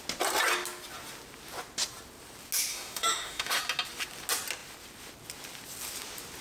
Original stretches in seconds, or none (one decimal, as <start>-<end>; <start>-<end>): 0.0-2.7; 3.6-6.4